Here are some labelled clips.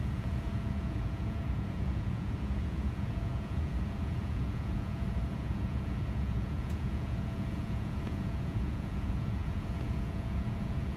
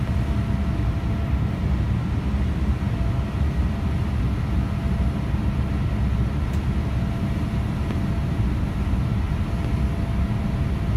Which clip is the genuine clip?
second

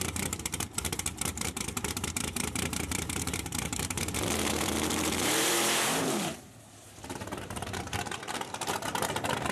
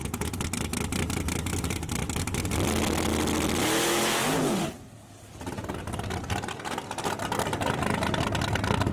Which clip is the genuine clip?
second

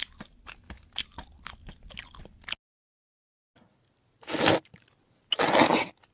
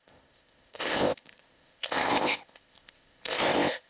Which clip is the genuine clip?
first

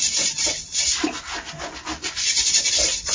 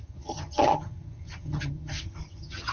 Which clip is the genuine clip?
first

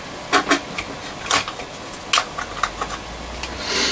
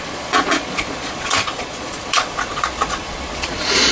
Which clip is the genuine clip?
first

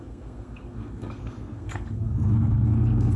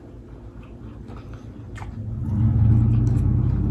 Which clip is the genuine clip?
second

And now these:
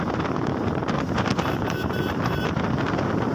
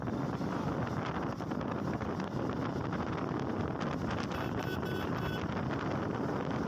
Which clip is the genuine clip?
second